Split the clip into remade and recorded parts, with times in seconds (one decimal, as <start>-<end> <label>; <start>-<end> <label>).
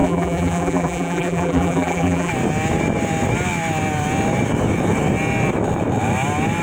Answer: 0.0-2.3 remade; 2.3-6.6 recorded